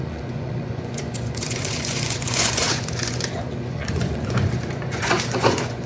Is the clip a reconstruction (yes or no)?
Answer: yes